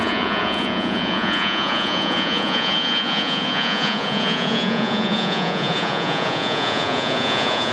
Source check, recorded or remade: remade